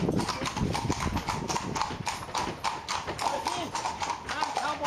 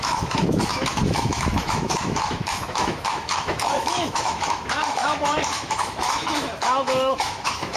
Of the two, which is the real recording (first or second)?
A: first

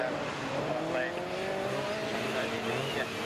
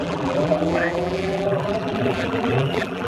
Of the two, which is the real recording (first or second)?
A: first